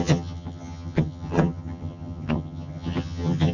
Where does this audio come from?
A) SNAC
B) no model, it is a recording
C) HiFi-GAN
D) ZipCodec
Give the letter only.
C